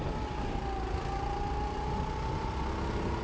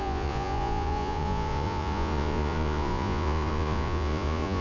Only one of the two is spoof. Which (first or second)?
second